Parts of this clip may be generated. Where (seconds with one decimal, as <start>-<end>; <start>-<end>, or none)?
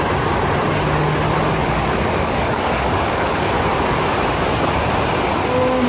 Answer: 1.6-3.5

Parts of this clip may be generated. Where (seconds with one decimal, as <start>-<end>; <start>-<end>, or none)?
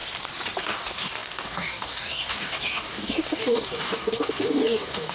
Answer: 0.6-5.1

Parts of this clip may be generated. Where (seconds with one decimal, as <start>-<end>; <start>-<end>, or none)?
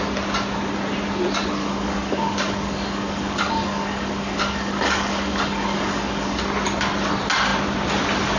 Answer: 1.6-6.4